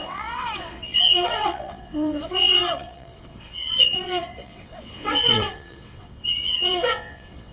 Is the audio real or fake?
fake